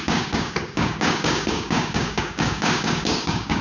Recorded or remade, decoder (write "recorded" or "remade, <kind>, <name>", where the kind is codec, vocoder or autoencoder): remade, codec, DAC